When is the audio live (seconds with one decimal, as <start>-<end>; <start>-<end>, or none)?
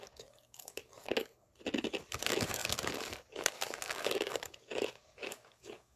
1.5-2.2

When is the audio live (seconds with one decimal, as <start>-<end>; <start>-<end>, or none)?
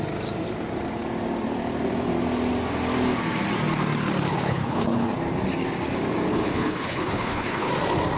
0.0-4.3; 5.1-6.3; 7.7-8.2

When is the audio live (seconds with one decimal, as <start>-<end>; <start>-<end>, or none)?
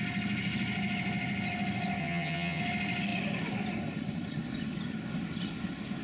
0.0-2.0; 2.6-6.0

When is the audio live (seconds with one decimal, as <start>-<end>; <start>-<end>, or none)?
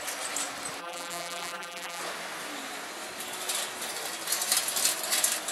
0.0-0.8; 2.0-5.5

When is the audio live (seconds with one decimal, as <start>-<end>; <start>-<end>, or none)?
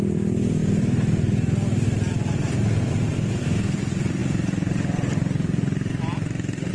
0.0-6.7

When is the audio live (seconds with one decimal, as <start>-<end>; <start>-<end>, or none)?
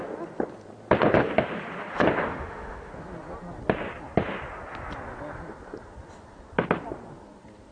0.0-2.3; 2.9-7.7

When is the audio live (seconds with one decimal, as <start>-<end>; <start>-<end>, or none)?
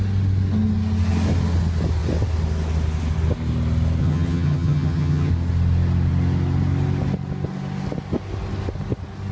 0.0-4.0; 5.3-9.3